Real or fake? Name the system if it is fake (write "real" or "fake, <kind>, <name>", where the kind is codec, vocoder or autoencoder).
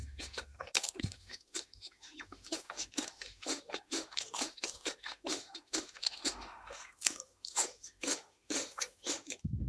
fake, autoencoder, DAC-VAE